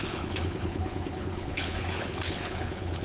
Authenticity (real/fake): fake